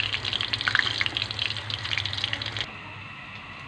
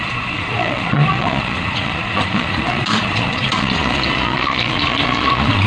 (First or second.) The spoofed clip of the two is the second